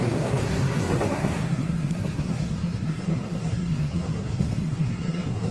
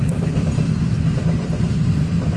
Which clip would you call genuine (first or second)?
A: second